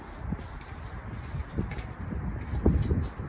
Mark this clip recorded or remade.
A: recorded